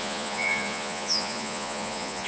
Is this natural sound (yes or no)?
no